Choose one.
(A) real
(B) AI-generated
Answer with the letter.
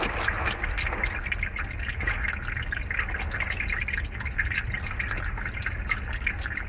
A